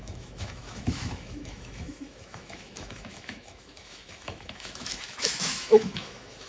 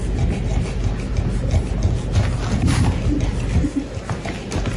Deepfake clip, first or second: first